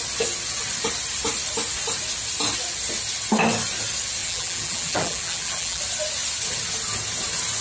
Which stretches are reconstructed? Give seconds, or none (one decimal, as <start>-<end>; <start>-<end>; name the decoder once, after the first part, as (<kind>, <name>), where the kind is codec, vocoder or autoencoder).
4.2-5.8 (vocoder, BigVGAN v2)